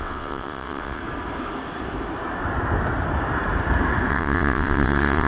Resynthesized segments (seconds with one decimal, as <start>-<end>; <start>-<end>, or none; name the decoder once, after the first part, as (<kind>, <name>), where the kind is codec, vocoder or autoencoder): 0.0-1.0 (vocoder, WaveNeXt); 4.1-5.3